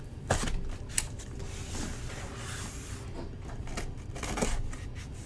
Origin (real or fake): real